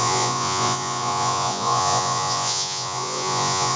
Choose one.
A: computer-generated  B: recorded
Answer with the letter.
A